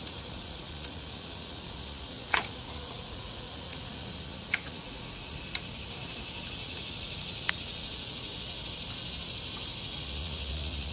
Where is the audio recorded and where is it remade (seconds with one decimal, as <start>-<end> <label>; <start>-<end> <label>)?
0.0-6.0 remade; 6.0-6.5 recorded; 6.5-8.3 remade; 8.3-9.8 recorded; 9.8-10.9 remade